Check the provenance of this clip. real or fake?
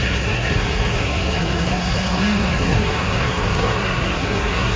fake